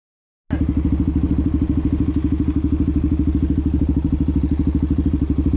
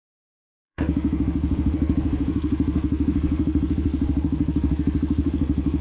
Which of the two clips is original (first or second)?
first